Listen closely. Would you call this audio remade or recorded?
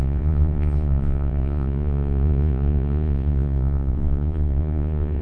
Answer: remade